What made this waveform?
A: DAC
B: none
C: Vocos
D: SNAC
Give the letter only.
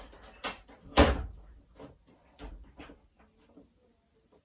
B